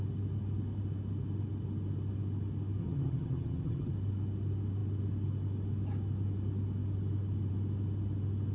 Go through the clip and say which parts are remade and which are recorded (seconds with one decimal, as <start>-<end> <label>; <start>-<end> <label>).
0.0-2.8 recorded; 2.8-3.9 remade; 3.9-8.5 recorded